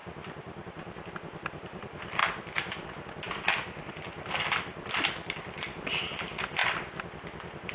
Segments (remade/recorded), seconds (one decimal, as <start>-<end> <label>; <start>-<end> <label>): 0.0-1.1 recorded; 1.1-2.2 remade; 2.2-5.9 recorded; 5.9-6.6 remade; 6.6-7.7 recorded